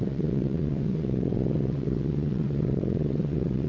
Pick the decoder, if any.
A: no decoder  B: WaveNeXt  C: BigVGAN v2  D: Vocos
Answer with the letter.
B